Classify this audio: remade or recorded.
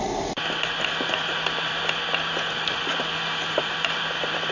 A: recorded